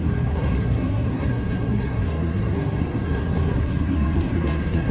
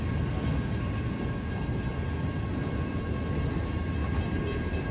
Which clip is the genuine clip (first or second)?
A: second